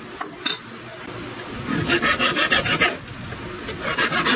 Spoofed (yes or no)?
no